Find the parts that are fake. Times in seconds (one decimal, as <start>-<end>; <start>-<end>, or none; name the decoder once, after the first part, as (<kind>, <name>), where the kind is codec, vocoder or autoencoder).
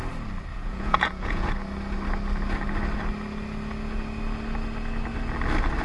0.5-1.5 (vocoder, Vocos)